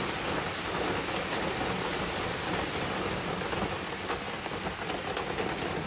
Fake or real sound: real